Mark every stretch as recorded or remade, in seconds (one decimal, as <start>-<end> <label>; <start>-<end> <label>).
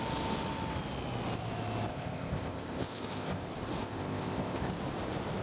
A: 0.0-1.9 recorded; 1.9-3.4 remade; 3.4-3.8 recorded; 3.8-4.7 remade; 4.7-5.4 recorded